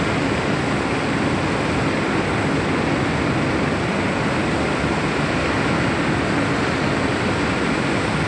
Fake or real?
real